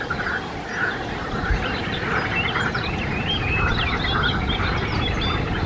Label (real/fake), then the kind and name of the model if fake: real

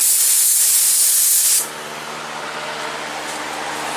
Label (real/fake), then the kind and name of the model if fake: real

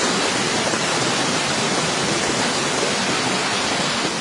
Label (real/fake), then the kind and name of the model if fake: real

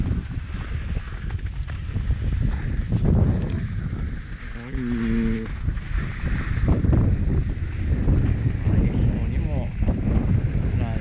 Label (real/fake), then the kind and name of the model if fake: real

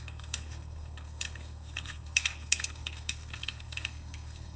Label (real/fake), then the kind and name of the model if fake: fake, codec, SNAC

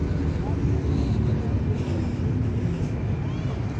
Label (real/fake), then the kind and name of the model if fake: real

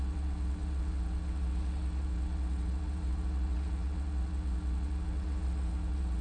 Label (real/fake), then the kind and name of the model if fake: fake, vocoder, WaveNeXt